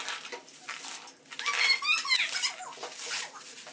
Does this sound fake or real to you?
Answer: real